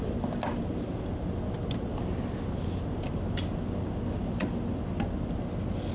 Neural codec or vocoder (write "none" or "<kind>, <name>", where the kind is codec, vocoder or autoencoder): none